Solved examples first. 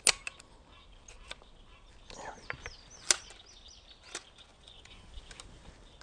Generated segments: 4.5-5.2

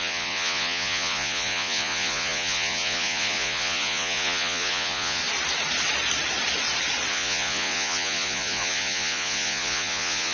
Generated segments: 0.0-5.2; 7.1-10.3